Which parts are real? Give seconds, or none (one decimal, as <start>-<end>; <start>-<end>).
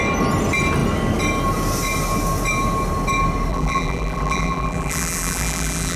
0.0-3.5